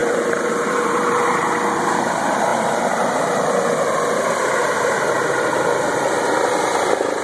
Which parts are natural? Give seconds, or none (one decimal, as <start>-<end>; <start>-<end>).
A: 1.5-2.5; 3.5-4.6; 5.1-7.2